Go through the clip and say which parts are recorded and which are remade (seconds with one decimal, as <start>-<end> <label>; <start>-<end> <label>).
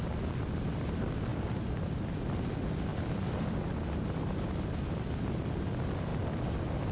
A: 0.0-1.3 recorded; 1.3-2.1 remade; 2.1-2.9 recorded; 2.9-3.6 remade; 3.6-6.1 recorded; 6.1-6.9 remade